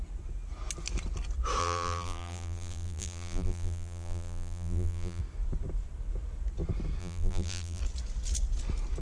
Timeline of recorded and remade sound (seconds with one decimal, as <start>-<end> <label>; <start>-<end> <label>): 0.0-1.6 recorded; 1.6-5.2 remade; 5.2-7.0 recorded; 7.0-7.8 remade; 7.8-9.0 recorded